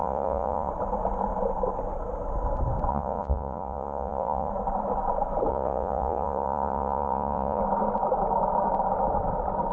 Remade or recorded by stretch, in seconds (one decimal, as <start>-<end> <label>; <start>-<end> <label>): 0.0-0.7 remade; 0.7-2.9 recorded; 2.9-4.5 remade; 4.5-5.5 recorded; 5.5-7.6 remade; 7.6-9.7 recorded